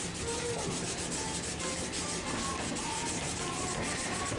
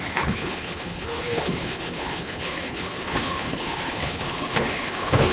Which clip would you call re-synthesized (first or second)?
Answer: second